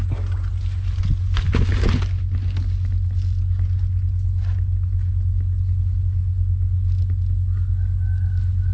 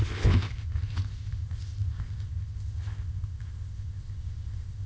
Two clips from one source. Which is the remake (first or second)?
second